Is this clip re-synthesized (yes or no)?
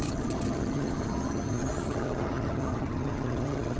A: yes